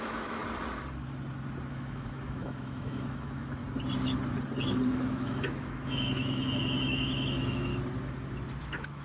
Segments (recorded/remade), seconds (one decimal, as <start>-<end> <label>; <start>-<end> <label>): 0.0-0.4 remade; 0.4-1.7 recorded; 1.7-3.6 remade; 3.6-4.9 recorded; 4.9-7.7 remade; 7.7-8.6 recorded; 8.6-9.0 remade